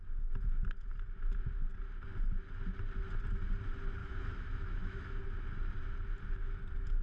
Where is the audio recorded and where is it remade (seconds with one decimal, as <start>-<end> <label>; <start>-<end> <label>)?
0.0-4.0 recorded; 4.0-5.2 remade; 5.2-7.0 recorded